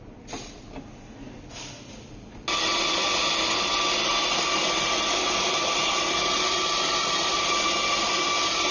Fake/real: real